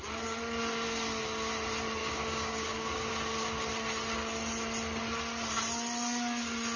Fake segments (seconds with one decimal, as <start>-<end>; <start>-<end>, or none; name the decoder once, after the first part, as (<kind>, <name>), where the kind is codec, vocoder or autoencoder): 2.0-3.1 (codec, DAC)